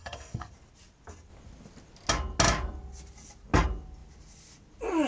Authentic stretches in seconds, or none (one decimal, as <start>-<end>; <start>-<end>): 0.5-5.1